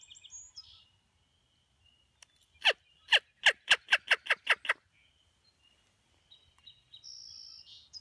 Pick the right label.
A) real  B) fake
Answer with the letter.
A